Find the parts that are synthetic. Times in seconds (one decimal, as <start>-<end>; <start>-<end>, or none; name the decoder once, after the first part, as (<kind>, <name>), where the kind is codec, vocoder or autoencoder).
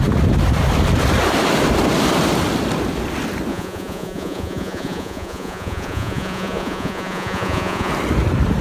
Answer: 3.5-7.9 (vocoder, Vocos)